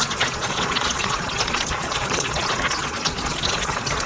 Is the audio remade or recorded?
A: remade